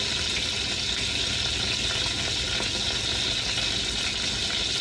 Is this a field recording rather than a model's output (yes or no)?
yes